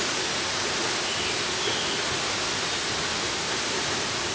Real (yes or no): yes